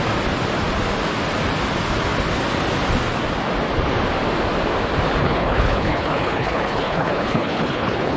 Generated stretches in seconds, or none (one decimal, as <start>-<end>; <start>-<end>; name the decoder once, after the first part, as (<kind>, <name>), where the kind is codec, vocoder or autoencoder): 5.2-8.2 (codec, HILCodec)